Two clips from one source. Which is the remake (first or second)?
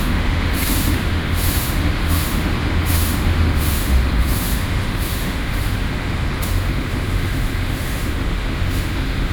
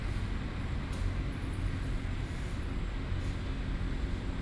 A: first